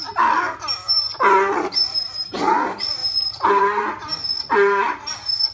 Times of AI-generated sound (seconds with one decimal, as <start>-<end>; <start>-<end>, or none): 1.8-2.4; 3.0-3.6